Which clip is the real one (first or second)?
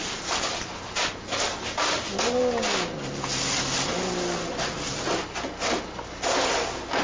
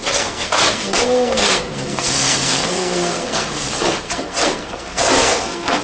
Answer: first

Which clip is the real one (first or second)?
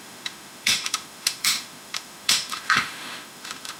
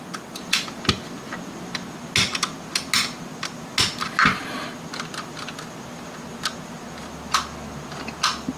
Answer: second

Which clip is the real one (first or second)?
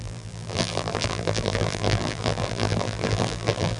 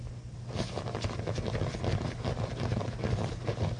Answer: second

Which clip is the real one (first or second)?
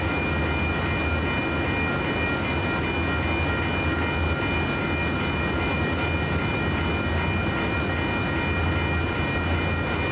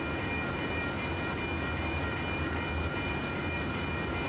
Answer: first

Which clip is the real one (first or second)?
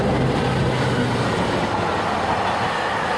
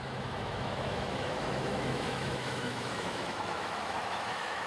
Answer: first